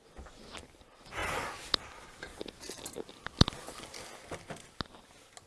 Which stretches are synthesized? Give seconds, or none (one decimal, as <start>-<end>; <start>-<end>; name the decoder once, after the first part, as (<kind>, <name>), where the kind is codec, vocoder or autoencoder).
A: none